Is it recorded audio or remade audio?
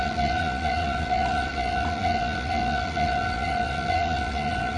remade